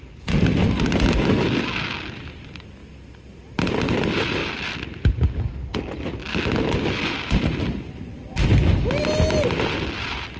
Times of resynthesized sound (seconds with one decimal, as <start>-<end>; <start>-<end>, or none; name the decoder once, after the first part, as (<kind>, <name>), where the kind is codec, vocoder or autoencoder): none

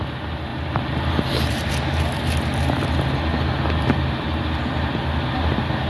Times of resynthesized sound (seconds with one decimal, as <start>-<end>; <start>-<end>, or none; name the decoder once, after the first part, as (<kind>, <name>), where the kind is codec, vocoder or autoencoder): 0.5-1.7 (vocoder, BigVGAN v2)